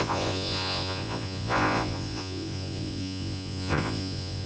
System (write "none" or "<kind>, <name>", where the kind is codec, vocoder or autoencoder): vocoder, Vocos